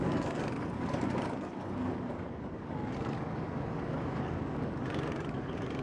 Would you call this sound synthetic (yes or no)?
yes